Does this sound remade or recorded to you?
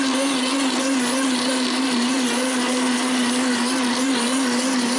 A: recorded